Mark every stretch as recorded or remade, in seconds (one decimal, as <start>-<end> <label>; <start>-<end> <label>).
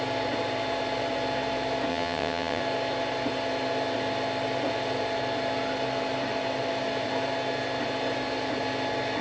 0.0-1.9 recorded; 1.9-2.6 remade; 2.6-9.2 recorded